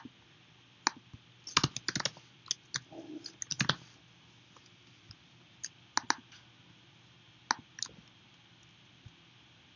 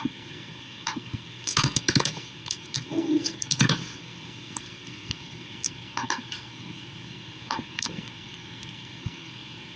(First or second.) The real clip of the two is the first